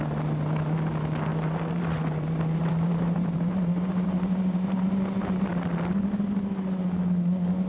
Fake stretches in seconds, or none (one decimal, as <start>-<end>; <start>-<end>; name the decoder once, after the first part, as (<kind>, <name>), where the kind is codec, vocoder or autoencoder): 1.3-5.5 (vocoder, BigVGAN v2)